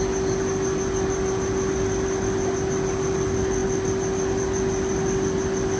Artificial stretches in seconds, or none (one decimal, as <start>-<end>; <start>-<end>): none

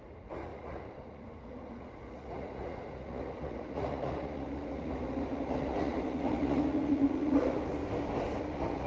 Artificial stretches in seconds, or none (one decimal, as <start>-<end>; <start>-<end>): 0.0-7.8; 8.4-8.9

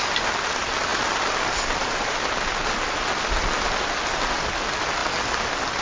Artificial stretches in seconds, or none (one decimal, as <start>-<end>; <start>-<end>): none

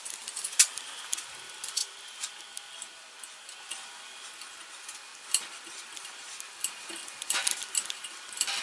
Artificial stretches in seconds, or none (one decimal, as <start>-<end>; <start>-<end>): none

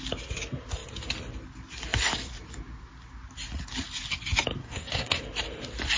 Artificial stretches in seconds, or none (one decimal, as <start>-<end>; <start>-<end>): 4.6-5.2

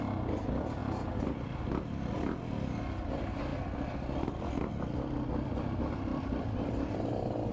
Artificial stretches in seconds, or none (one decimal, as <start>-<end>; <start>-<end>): 0.8-2.5; 6.1-7.5

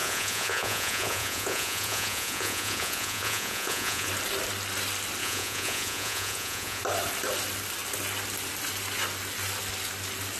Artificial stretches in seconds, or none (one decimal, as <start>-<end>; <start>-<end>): 0.0-4.1; 5.2-6.8

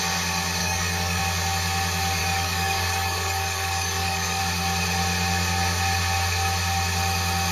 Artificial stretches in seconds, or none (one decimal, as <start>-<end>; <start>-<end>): 0.6-1.2; 2.2-4.4